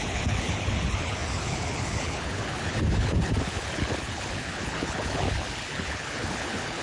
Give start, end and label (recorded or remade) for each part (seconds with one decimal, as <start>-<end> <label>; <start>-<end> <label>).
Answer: 0.0-6.8 remade